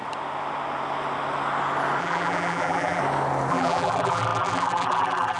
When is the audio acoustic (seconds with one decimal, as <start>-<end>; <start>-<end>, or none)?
0.0-2.0; 3.0-3.5